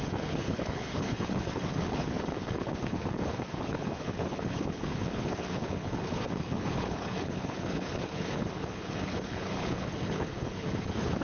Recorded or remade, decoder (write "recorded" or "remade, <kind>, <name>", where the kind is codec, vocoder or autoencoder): remade, codec, HILCodec